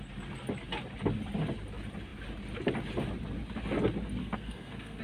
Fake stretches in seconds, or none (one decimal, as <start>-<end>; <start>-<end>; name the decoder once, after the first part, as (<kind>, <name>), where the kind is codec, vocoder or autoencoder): 4.2-5.0 (codec, SNAC)